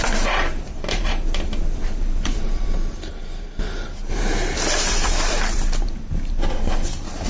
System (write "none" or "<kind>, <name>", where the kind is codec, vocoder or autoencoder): vocoder, BigVGAN v2